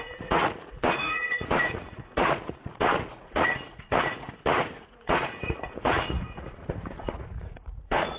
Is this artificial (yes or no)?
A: yes